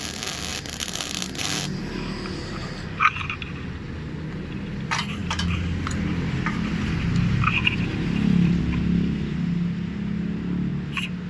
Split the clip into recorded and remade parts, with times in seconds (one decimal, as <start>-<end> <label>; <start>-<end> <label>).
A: 0.0-0.5 recorded; 0.5-1.8 remade; 1.8-5.2 recorded; 5.2-8.6 remade; 8.6-10.7 recorded; 10.7-11.3 remade